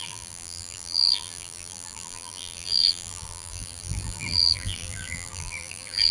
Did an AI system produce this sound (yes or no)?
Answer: yes